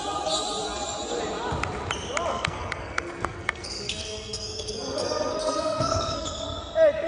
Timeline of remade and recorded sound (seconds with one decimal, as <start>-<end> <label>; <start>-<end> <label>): 0.0-2.3 recorded; 2.3-6.6 remade; 6.6-7.1 recorded

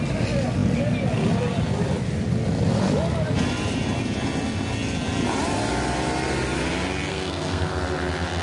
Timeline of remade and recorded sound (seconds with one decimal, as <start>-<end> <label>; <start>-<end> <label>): 0.0-7.1 recorded; 7.1-7.7 remade; 7.7-8.4 recorded

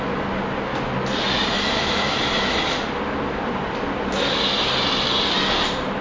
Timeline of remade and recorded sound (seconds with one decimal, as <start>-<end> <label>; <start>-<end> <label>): 0.0-6.0 recorded